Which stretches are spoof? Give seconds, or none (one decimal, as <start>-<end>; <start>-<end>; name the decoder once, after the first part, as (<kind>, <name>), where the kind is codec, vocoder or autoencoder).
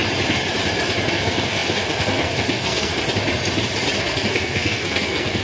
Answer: 1.1-2.9 (codec, SNAC); 4.0-5.4